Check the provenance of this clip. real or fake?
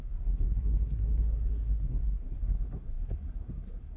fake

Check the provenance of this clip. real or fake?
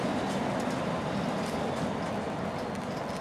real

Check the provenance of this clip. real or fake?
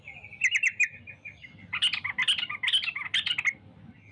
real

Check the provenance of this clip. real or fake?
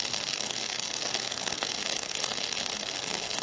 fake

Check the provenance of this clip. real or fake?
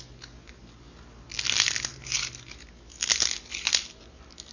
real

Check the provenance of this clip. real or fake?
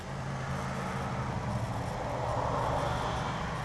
real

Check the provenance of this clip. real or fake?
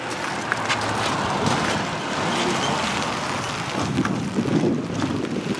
real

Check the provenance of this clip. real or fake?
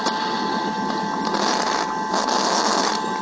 real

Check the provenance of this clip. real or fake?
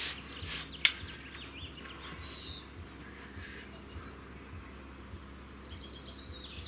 real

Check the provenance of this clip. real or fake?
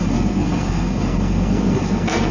fake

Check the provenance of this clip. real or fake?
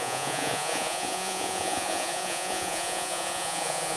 fake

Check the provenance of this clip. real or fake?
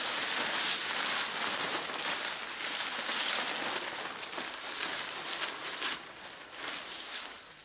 real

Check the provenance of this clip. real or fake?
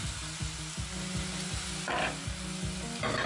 real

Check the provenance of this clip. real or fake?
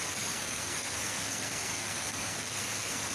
fake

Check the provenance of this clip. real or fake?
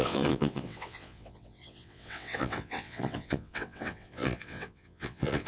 fake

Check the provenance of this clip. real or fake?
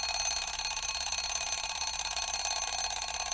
fake